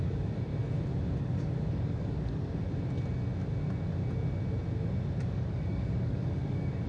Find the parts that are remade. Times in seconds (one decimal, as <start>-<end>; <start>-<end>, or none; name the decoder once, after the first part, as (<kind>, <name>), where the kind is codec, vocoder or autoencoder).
0.0-0.5 (codec, DAC); 1.2-2.5; 5.2-6.9